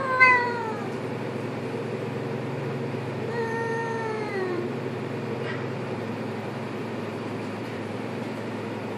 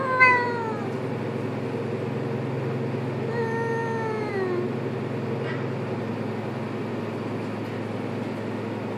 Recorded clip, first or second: second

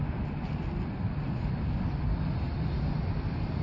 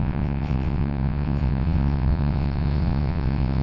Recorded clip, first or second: first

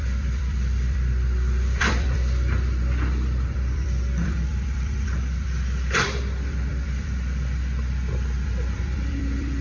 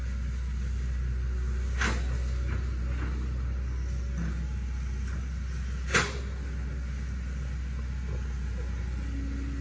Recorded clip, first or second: second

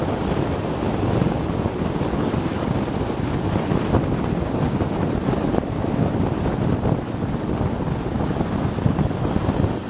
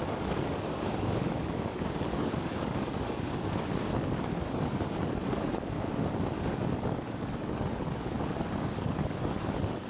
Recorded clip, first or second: first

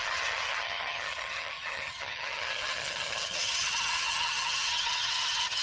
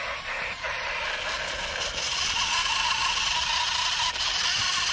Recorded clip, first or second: second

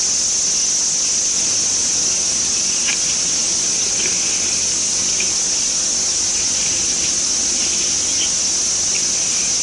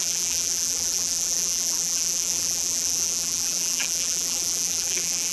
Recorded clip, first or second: first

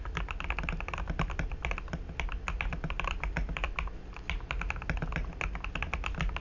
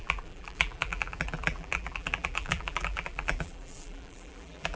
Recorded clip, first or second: first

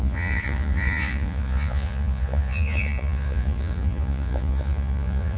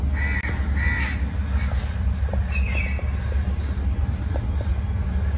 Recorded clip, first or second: second